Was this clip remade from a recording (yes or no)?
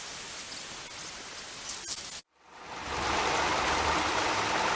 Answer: no